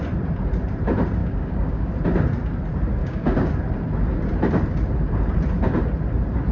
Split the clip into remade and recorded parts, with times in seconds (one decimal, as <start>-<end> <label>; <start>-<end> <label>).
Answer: 0.0-1.2 recorded; 1.2-1.9 remade; 1.9-3.0 recorded; 3.0-3.5 remade; 3.5-6.5 recorded